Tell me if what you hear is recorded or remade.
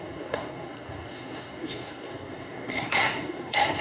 remade